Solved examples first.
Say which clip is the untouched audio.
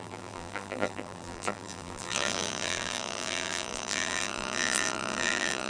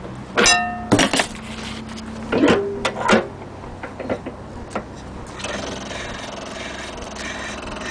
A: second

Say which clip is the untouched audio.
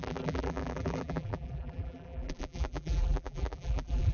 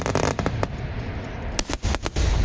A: second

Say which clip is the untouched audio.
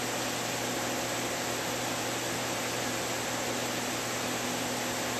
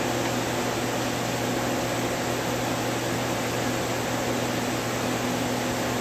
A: second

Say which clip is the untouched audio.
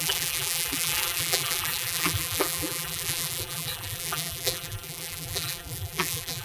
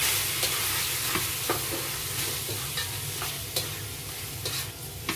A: second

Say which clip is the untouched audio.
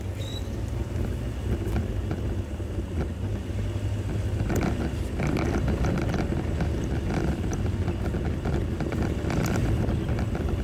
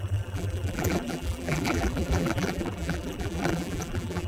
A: first